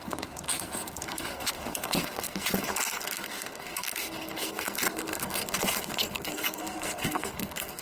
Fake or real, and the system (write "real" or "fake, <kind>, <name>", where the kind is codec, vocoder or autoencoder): fake, codec, SNAC